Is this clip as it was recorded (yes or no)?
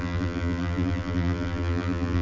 no